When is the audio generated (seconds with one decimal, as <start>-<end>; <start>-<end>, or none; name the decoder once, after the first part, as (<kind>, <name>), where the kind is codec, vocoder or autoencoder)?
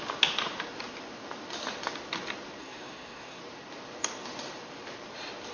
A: 2.6-3.4 (codec, SNAC)